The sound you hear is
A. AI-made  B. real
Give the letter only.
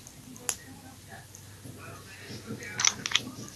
B